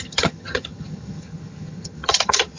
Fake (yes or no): yes